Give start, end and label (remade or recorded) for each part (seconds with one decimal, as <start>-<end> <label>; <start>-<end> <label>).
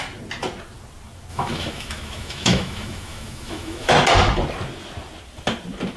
0.0-1.3 recorded; 1.3-3.9 remade; 3.9-6.0 recorded